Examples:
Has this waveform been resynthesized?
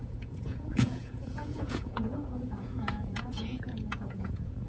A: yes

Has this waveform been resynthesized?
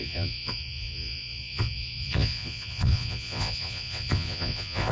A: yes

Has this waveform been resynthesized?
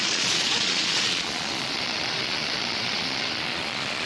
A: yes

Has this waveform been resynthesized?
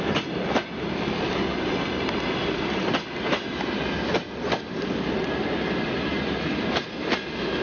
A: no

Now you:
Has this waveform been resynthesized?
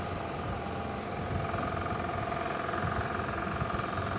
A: no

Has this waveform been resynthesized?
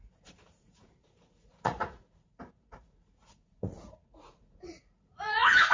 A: yes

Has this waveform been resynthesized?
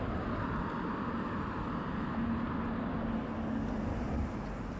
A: no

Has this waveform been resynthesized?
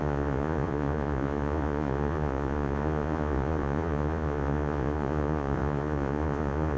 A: yes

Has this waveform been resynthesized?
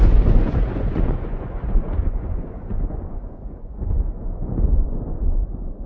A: yes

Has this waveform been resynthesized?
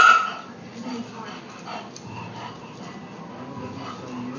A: no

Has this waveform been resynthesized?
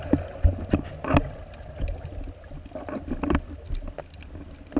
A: no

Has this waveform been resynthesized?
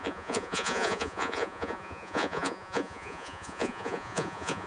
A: yes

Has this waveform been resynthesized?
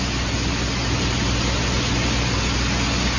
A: no